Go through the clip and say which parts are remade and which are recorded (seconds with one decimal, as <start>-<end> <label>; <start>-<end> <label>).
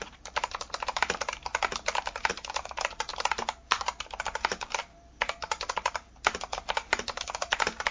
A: 0.0-1.5 remade; 1.5-2.3 recorded; 2.3-7.9 remade